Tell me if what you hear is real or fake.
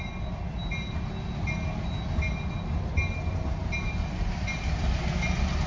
real